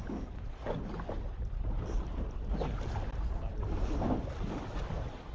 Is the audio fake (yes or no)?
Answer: no